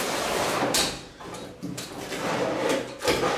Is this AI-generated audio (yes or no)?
no